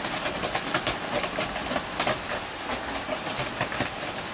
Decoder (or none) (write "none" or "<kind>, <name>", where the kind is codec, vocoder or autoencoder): none